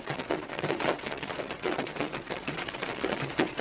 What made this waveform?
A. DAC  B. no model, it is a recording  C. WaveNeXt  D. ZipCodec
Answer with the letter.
C